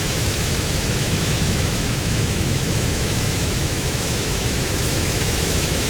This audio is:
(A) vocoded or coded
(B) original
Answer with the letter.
A